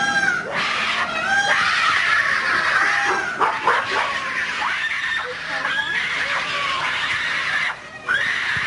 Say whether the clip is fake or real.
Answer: fake